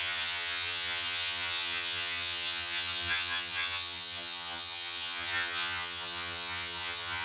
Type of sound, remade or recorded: remade